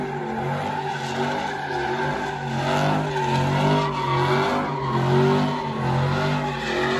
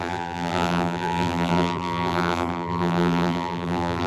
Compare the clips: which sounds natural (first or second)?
first